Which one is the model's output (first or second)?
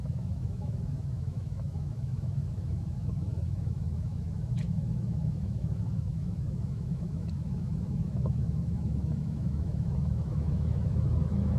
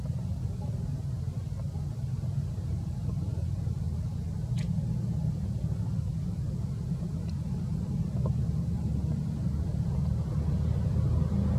first